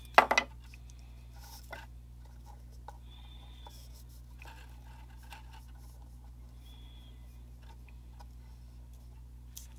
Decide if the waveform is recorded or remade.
recorded